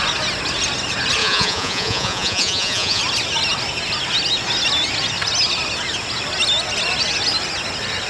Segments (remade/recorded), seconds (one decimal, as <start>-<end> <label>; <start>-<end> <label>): 0.0-1.2 recorded; 1.2-3.0 remade; 3.0-8.1 recorded